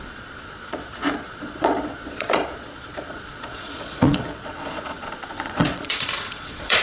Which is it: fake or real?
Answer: fake